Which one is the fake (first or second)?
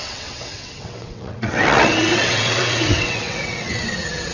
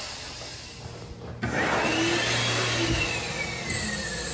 first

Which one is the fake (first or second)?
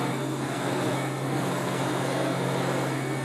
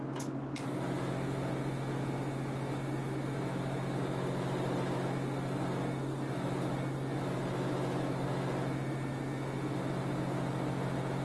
first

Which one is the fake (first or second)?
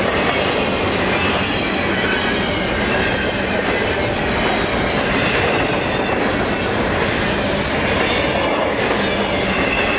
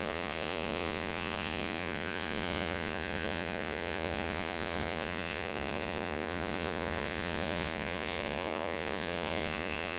second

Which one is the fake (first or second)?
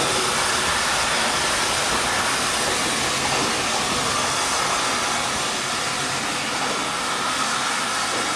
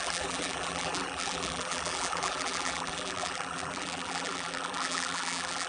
second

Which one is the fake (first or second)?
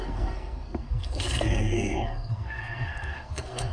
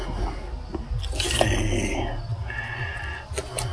first